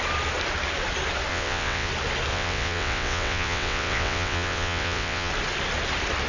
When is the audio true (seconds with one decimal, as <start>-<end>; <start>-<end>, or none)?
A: 0.0-1.3; 1.9-2.3; 5.3-6.3